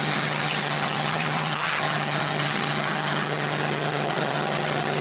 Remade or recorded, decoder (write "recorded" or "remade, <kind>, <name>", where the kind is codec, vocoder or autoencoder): remade, vocoder, HiFi-GAN